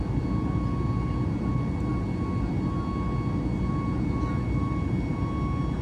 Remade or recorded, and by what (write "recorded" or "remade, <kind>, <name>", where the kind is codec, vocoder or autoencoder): recorded